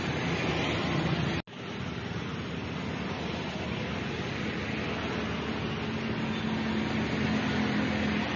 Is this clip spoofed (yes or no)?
no